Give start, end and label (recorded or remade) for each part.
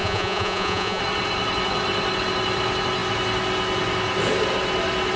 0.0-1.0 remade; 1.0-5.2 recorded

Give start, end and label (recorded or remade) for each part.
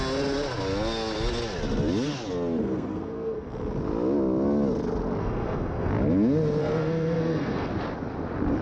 0.0-2.6 recorded; 2.6-3.5 remade; 3.5-5.2 recorded; 5.2-5.9 remade; 5.9-6.6 recorded; 6.6-7.7 remade; 7.7-8.6 recorded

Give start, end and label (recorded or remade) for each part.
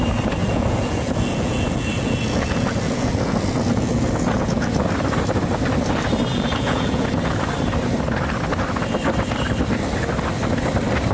0.0-0.4 recorded; 0.4-4.7 remade; 4.7-6.3 recorded; 6.3-7.5 remade; 7.5-11.1 recorded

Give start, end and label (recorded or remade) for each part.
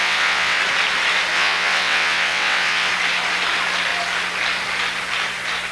0.0-0.6 remade; 0.6-1.3 recorded; 1.3-2.9 remade; 2.9-5.7 recorded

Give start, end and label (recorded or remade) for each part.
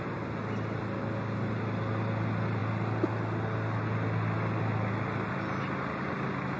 0.0-6.6 recorded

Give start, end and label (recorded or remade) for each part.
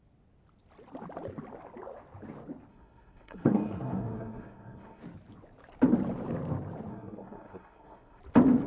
0.0-2.7 recorded; 2.7-5.0 remade; 5.0-6.9 recorded; 6.9-8.2 remade; 8.2-8.7 recorded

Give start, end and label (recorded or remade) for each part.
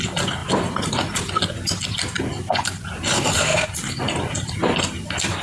0.0-5.4 recorded